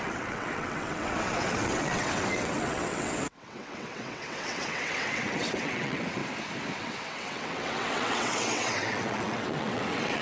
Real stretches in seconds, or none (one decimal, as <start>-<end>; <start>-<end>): 6.2-6.8